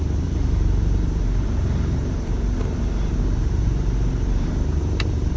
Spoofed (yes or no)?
yes